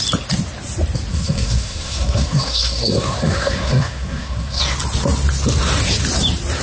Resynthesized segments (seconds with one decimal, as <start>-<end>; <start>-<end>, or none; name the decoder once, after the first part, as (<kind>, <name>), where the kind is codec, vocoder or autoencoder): 1.1-4.6 (codec, SNAC)